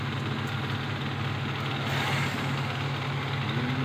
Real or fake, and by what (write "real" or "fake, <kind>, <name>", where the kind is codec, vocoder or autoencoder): real